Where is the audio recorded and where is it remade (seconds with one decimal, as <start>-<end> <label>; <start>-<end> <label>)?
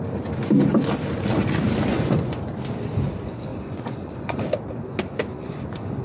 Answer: 0.0-1.9 recorded; 1.9-2.4 remade; 2.4-3.5 recorded; 3.5-4.4 remade; 4.4-5.3 recorded; 5.3-6.0 remade